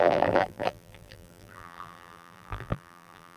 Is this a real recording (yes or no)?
no